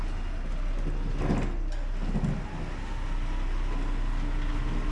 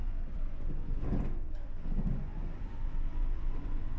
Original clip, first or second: first